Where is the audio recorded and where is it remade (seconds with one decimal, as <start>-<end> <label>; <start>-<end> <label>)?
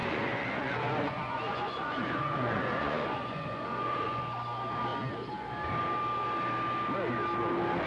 0.0-4.2 remade; 4.2-7.9 recorded